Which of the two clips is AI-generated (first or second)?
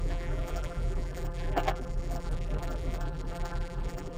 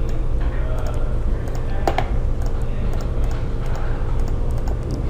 first